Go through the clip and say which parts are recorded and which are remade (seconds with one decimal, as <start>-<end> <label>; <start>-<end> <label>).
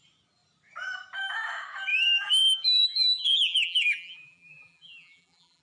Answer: 0.0-1.9 recorded; 1.9-5.6 remade